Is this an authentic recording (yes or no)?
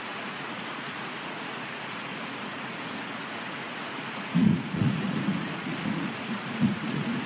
no